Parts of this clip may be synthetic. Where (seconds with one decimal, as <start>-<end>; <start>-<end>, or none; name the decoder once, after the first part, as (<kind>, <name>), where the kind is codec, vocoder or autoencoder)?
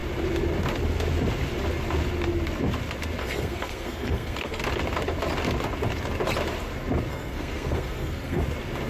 3.2-4.6 (codec, SNAC); 7.1-8.4